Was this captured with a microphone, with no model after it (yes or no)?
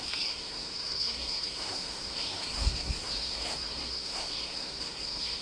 no